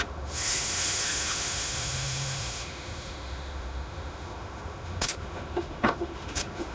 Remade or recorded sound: remade